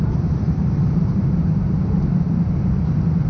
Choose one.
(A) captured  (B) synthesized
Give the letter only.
B